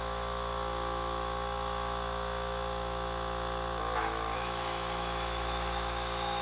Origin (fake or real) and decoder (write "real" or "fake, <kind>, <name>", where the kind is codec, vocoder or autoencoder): fake, autoencoder, DAC-VAE